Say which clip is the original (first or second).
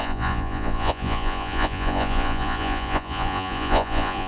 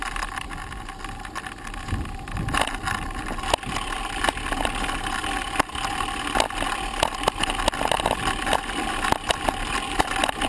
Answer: second